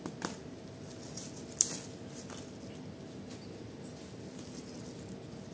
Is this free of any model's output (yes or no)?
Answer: yes